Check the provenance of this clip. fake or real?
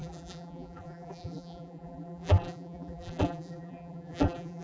fake